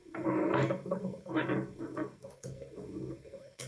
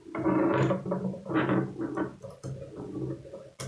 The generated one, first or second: first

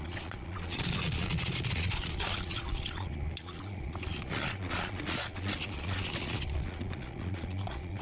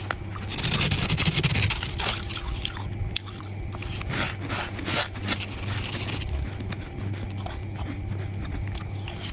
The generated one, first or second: first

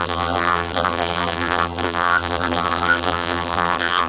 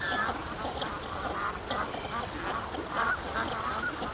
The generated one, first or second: first